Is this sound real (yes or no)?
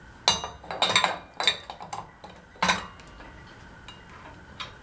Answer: yes